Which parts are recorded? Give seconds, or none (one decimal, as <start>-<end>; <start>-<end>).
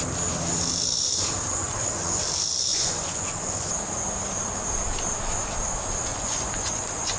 0.0-1.5; 2.2-2.7; 3.7-6.1